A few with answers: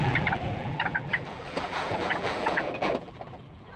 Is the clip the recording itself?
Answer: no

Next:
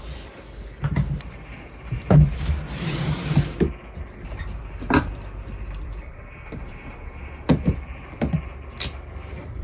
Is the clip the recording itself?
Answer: no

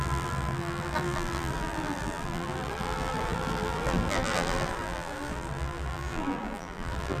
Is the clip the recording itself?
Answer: no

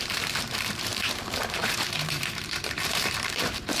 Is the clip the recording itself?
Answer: no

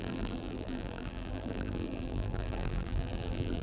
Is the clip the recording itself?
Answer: no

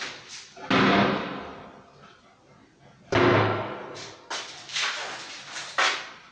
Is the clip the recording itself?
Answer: yes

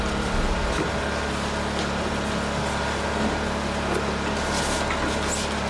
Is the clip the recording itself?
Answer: yes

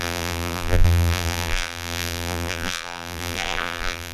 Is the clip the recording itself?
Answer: no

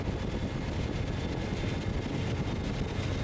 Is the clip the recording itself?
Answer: yes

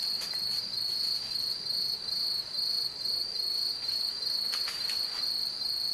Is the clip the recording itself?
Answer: yes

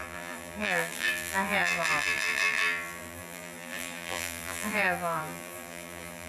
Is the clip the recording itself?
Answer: no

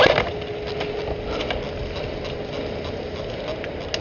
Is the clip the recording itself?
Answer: yes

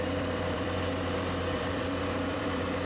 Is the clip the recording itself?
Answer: no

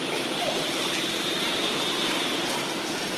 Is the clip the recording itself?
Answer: no